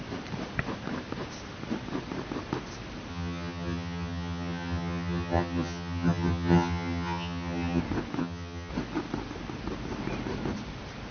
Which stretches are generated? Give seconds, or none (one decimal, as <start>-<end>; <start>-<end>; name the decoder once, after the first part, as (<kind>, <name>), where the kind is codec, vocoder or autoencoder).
3.1-7.8 (vocoder, HiFi-GAN); 8.2-8.7